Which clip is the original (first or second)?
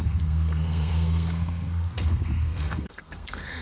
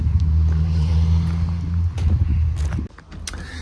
second